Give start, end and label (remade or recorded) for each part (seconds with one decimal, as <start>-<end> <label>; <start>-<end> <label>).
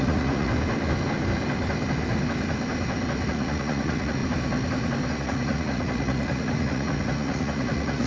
0.0-0.5 remade; 0.5-3.3 recorded; 3.3-4.2 remade; 4.2-5.1 recorded; 5.1-8.1 remade